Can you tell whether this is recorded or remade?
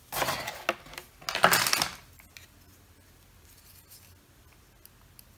recorded